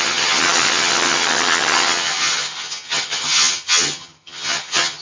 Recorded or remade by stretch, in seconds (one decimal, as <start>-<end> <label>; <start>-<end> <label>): 0.0-5.0 remade